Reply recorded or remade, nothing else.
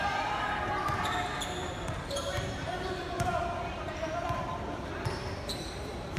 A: remade